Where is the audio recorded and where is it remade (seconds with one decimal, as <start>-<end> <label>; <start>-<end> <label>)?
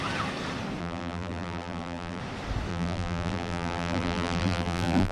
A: 0.0-0.8 recorded; 0.8-2.2 remade; 2.2-2.7 recorded; 2.7-5.1 remade